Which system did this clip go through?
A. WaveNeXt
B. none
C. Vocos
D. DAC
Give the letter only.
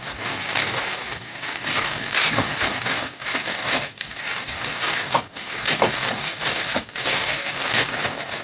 D